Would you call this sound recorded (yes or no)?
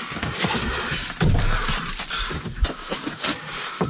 yes